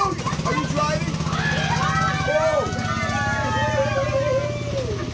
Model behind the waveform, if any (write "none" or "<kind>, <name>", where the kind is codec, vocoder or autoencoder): none